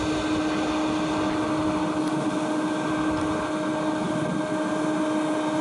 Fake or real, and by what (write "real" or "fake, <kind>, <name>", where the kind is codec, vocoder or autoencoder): real